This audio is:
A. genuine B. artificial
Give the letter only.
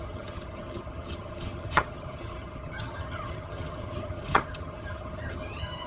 B